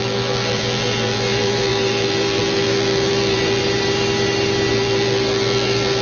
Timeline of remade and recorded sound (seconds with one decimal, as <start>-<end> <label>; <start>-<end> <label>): 0.0-3.6 remade; 3.6-4.7 recorded; 4.7-6.0 remade